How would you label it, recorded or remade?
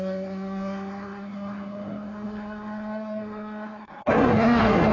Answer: remade